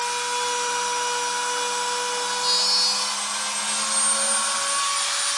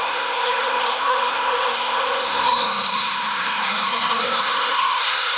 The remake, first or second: second